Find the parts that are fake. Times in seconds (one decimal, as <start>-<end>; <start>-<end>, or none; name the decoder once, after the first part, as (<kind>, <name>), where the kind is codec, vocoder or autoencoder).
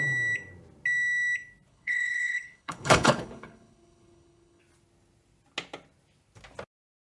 1.7-4.6 (codec, HILCodec)